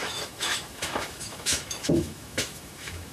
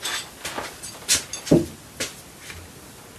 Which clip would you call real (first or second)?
second